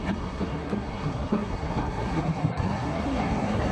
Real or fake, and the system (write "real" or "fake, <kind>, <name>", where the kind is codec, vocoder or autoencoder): fake, codec, SNAC